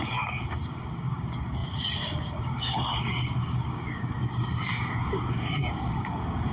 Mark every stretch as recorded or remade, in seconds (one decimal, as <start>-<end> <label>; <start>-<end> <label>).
0.0-6.5 remade